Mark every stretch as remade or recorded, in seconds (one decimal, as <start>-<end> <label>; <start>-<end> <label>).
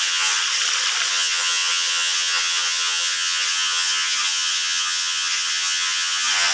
0.0-0.4 remade; 0.4-1.1 recorded; 1.1-6.5 remade